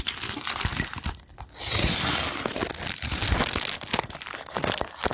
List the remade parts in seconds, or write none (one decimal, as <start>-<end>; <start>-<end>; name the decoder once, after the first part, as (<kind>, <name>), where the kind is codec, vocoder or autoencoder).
0.7-1.3 (vocoder, BigVGAN v2)

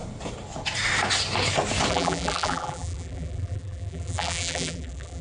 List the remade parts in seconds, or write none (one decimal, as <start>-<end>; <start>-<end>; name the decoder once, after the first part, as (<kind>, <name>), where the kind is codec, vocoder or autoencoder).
1.9-5.2 (vocoder, BigVGAN v2)

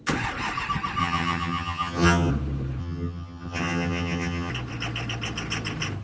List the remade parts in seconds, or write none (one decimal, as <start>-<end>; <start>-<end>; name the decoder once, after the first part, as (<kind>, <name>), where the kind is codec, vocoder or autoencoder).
1.0-2.3 (vocoder, HiFi-GAN); 2.8-4.5

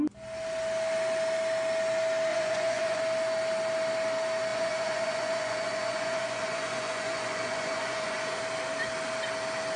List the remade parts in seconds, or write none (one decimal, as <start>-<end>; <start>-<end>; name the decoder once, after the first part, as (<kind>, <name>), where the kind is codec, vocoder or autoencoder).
2.3-3.0 (vocoder, Vocos); 4.5-8.4

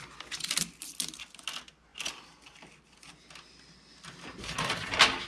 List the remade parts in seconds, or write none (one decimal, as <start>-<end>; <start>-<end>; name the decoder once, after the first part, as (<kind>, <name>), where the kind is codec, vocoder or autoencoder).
none

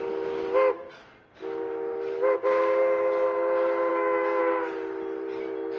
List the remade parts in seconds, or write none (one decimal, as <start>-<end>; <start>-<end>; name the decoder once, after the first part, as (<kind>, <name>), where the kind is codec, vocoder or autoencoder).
3.9-4.4 (codec, DAC)

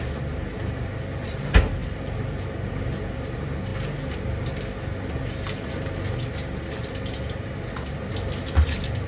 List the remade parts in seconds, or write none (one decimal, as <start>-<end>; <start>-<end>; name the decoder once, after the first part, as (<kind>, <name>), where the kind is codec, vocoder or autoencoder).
none